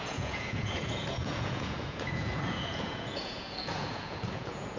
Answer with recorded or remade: remade